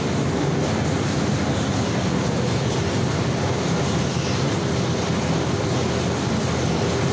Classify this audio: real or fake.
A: fake